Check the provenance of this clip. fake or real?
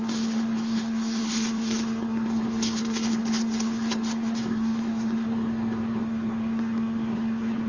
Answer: fake